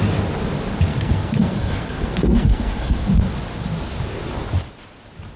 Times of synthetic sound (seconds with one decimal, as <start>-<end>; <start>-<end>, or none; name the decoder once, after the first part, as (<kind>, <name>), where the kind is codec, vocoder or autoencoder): 0.9-3.1 (codec, SNAC)